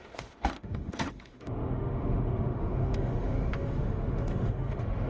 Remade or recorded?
remade